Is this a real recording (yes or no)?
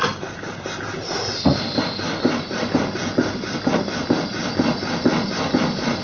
yes